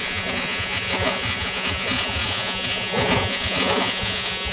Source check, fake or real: fake